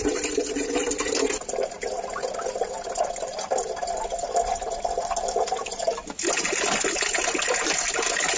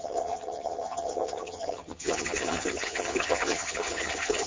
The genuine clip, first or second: first